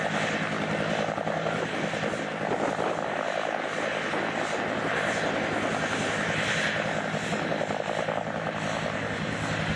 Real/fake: real